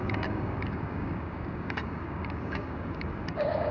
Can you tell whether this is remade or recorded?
remade